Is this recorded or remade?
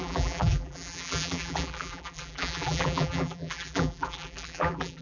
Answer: remade